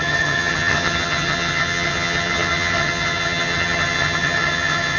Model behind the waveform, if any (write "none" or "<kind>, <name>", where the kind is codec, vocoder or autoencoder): vocoder, HiFi-GAN